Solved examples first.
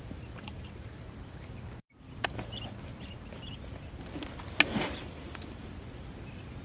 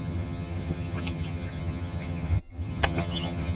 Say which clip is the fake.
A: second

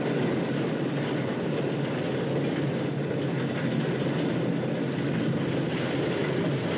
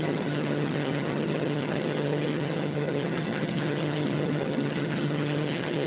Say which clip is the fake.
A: second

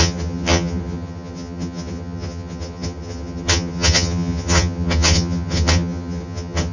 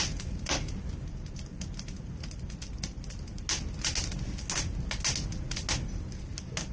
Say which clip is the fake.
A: first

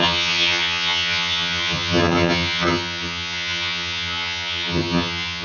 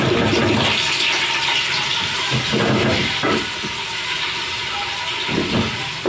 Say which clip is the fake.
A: first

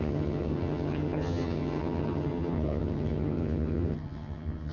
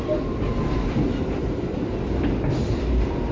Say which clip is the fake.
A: first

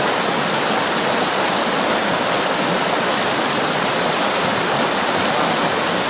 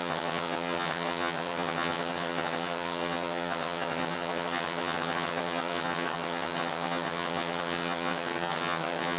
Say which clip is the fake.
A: second